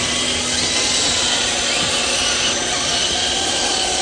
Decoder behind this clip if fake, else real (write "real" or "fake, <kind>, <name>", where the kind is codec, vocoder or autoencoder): real